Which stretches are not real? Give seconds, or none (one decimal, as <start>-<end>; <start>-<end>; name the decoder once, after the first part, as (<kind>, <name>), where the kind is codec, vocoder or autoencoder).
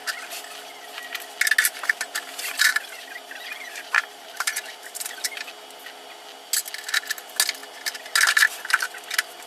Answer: 2.7-5.1 (vocoder, BigVGAN v2)